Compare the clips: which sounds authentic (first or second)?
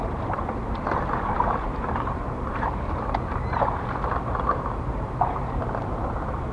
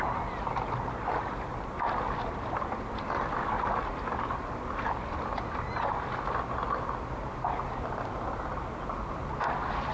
second